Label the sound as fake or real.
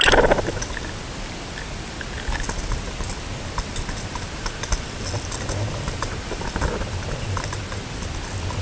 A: real